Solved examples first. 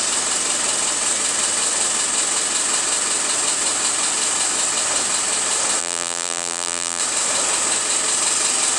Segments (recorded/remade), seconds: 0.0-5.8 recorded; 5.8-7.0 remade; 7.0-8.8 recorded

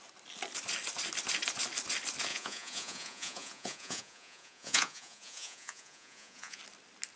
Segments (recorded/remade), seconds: 0.0-2.3 recorded; 2.3-6.6 remade; 6.6-7.2 recorded

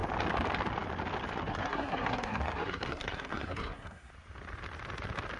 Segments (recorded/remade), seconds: 0.0-1.5 recorded; 1.5-4.1 remade; 4.1-5.4 recorded

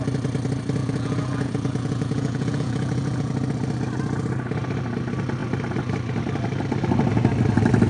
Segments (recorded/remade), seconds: 0.0-0.8 recorded; 0.8-3.3 remade; 3.3-7.9 recorded

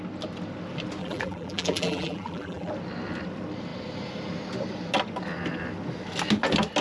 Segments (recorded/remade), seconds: 0.0-1.0 recorded; 1.0-2.7 remade; 2.7-6.8 recorded